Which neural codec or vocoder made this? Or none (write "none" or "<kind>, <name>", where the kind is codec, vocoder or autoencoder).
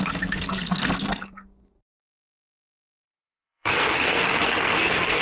codec, SNAC